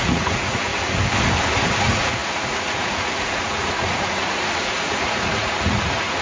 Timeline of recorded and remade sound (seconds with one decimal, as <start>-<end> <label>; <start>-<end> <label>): 0.0-0.7 remade; 0.7-1.8 recorded; 1.8-6.2 remade